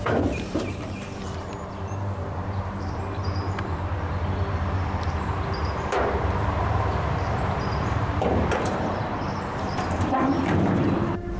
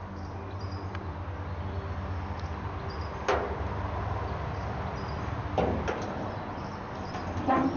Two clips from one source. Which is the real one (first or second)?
second